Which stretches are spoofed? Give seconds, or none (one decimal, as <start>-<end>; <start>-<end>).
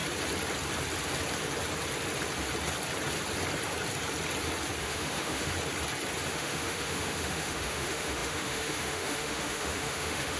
4.8-5.5; 6.3-10.4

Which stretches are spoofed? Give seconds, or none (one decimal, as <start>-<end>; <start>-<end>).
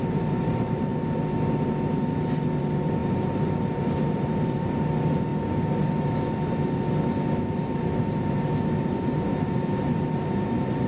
0.0-0.9; 2.6-5.3; 7.3-10.9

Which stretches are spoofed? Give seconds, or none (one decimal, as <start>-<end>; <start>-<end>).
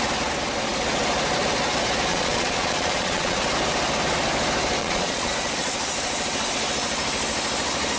2.1-3.4; 4.8-5.3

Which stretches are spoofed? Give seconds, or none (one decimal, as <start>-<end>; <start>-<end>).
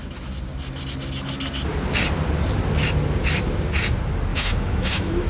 4.3-5.3